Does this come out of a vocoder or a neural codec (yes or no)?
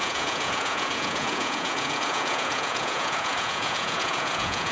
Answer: yes